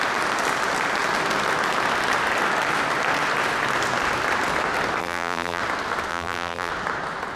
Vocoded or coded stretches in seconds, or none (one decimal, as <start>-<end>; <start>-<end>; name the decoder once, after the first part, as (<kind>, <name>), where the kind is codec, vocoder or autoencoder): 5.0-5.6 (vocoder, BigVGAN v2); 6.1-6.7